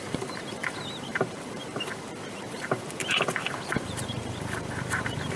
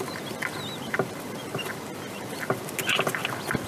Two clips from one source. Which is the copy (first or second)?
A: first